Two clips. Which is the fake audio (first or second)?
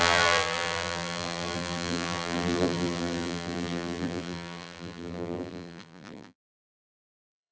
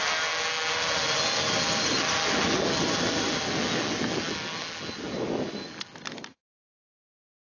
first